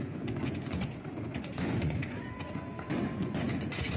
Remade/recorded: remade